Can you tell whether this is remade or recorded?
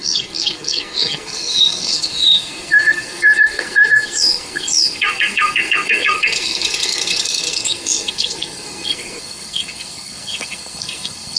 remade